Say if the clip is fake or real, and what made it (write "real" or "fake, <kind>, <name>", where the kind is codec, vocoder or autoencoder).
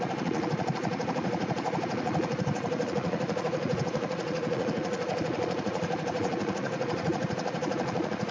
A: fake, vocoder, Vocos